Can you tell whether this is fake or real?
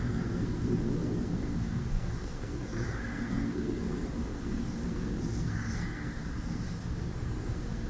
fake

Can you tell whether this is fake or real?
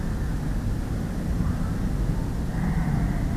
real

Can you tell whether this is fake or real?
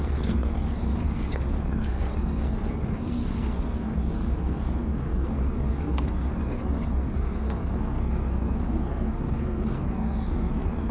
fake